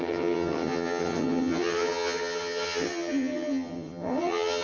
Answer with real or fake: fake